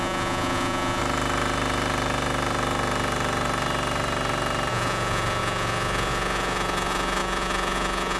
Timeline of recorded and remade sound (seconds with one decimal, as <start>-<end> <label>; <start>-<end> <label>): 0.0-1.0 remade; 1.0-4.7 recorded; 4.7-8.2 remade

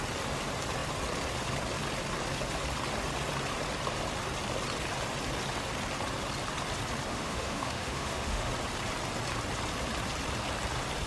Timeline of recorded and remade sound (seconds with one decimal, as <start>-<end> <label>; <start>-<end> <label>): 0.0-7.1 recorded; 7.1-8.5 remade; 8.5-11.1 recorded

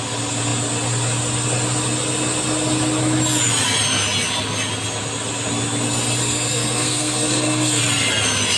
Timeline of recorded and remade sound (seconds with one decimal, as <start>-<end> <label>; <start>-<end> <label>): 0.0-6.2 recorded; 6.2-7.8 remade; 7.8-8.6 recorded